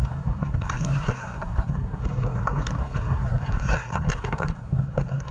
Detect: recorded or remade remade